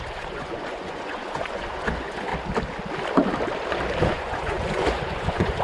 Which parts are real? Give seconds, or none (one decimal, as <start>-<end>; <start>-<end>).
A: 2.3-4.0